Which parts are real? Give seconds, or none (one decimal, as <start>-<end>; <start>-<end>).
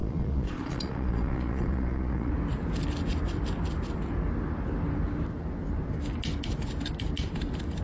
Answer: 2.3-7.8